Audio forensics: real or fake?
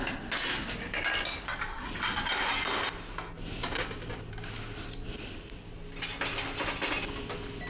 real